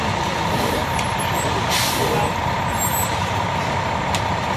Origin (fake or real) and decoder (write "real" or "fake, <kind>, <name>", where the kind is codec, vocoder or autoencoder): real